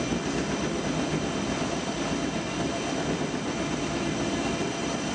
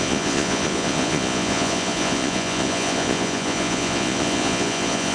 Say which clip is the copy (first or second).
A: second